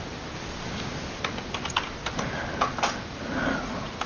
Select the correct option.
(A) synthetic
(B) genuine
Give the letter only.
B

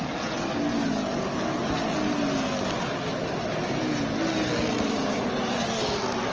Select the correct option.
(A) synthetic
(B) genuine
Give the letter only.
B